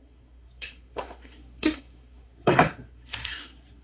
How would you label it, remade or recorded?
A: remade